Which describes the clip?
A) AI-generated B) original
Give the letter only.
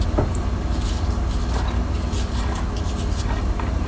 B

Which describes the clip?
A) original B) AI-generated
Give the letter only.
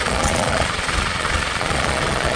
B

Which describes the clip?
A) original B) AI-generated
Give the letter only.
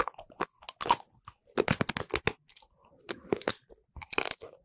A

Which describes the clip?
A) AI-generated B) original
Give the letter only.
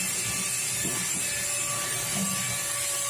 B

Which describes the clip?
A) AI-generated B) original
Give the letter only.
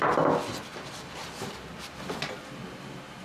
B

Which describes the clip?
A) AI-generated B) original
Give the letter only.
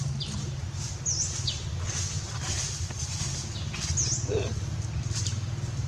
B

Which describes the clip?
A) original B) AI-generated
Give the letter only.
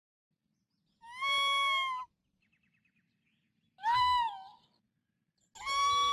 A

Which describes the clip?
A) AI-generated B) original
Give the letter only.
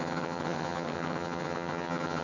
A